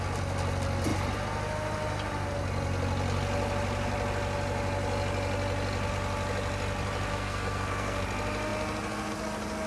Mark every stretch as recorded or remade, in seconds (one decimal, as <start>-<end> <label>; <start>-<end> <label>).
0.0-7.1 recorded; 7.1-8.0 remade; 8.0-9.7 recorded